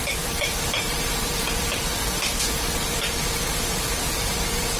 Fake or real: fake